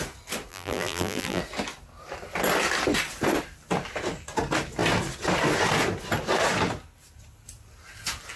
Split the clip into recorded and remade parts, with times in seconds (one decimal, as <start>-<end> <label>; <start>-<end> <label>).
0.0-0.5 recorded; 0.5-1.4 remade; 1.4-8.4 recorded